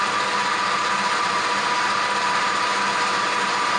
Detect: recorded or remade recorded